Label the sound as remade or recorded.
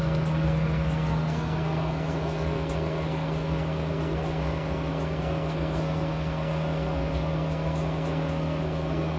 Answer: remade